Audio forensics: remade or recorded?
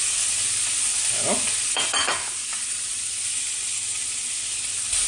recorded